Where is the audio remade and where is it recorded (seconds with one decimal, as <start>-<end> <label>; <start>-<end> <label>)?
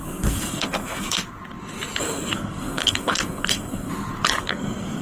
0.0-1.2 remade; 1.2-2.0 recorded; 2.0-3.9 remade; 3.9-4.4 recorded; 4.4-5.0 remade